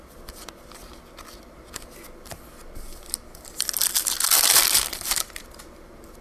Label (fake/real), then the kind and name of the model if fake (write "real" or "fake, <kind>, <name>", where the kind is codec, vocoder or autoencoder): real